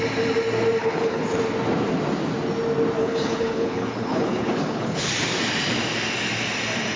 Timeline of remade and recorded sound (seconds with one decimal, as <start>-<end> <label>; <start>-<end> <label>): 0.0-0.8 recorded; 0.8-1.4 remade; 1.4-3.0 recorded; 3.0-5.1 remade; 5.1-7.0 recorded